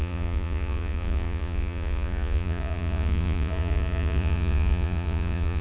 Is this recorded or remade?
remade